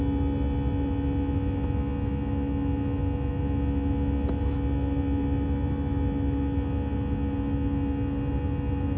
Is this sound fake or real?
real